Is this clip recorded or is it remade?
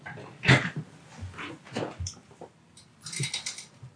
recorded